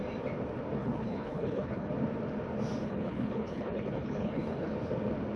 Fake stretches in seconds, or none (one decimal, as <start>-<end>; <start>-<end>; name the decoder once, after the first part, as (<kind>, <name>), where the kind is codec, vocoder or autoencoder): 0.8-1.9 (codec, HILCodec); 2.8-4.7